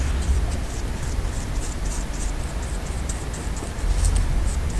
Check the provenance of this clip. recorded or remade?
recorded